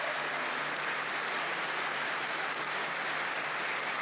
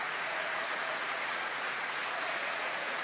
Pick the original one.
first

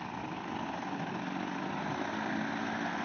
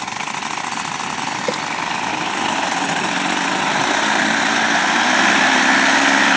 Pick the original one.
first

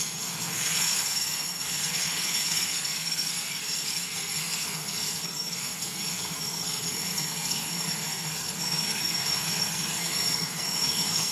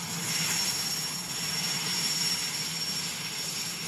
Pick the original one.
second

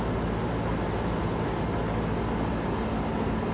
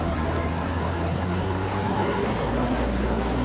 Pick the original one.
first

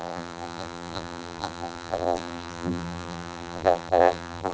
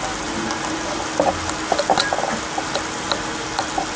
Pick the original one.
second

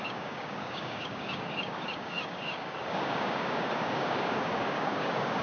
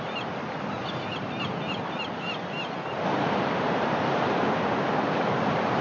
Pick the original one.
second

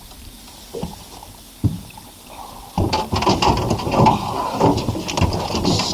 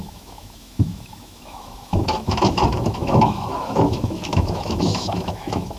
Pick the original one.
first